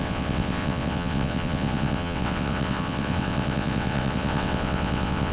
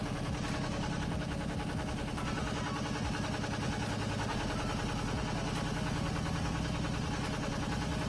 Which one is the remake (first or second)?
first